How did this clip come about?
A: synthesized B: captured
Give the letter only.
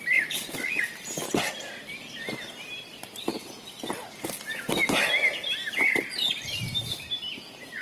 B